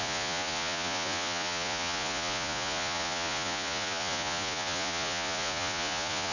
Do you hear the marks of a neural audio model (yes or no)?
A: yes